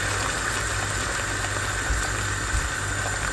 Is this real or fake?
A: real